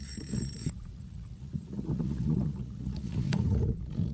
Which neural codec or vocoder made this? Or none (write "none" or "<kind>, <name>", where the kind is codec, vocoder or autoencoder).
vocoder, Vocos